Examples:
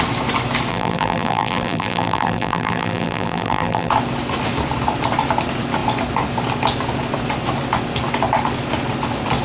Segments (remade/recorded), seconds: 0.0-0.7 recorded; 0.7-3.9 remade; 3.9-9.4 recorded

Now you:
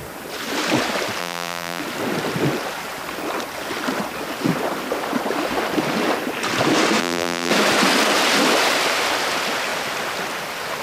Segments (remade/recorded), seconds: 0.0-1.2 recorded; 1.2-1.8 remade; 1.8-7.0 recorded; 7.0-7.5 remade; 7.5-10.8 recorded

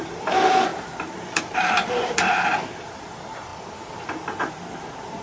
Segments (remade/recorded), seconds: 0.0-3.5 remade; 3.5-4.5 recorded; 4.5-5.2 remade